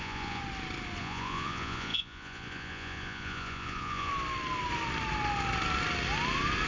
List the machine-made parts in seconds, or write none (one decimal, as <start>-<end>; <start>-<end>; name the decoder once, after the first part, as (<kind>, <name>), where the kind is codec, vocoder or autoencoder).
0.0-0.4 (vocoder, Vocos); 1.0-4.1

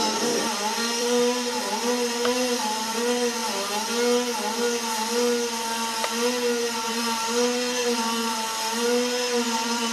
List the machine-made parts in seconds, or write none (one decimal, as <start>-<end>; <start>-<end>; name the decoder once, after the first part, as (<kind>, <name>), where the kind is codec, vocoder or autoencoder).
0.0-3.4 (vocoder, BigVGAN v2); 6.6-9.9

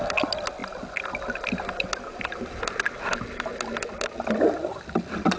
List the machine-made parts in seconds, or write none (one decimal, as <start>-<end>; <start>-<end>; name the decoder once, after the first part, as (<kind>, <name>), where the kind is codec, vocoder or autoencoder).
none

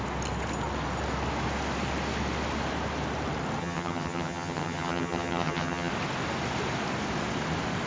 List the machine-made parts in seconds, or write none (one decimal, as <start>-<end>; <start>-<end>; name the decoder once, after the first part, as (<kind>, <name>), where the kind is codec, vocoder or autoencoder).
3.6-5.9 (vocoder, HiFi-GAN)

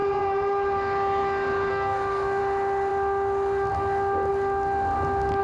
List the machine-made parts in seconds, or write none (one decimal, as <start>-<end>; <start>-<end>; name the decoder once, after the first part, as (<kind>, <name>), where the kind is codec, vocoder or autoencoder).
1.7-2.4 (codec, SNAC)

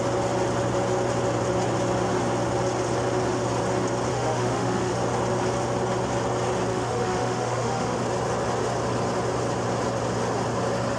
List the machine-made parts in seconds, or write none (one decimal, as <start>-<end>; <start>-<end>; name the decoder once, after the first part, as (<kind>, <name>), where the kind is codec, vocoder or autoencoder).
4.1-4.9 (autoencoder, DAC-VAE); 6.7-8.0

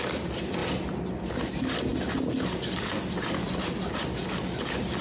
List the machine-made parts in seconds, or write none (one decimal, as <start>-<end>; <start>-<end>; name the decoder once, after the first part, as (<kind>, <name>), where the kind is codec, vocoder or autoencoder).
none